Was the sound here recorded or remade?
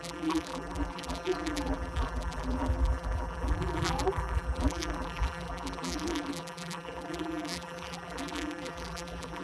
remade